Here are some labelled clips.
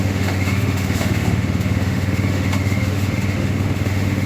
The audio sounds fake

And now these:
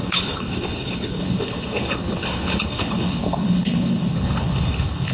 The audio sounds fake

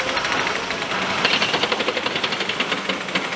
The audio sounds fake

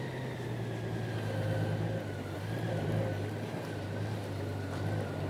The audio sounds real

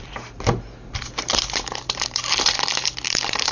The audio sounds fake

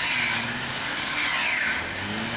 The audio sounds real